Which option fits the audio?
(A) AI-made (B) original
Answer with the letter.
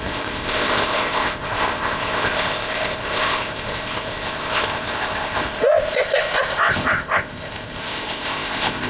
A